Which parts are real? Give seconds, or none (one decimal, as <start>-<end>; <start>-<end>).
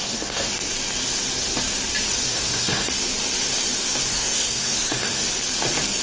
0.5-2.3; 2.9-4.1; 5.3-6.0